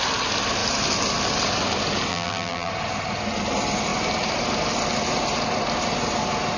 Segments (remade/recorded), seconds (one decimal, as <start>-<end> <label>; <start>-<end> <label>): 0.0-2.1 recorded; 2.1-2.7 remade; 2.7-6.6 recorded